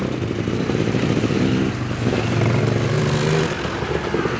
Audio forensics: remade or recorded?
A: recorded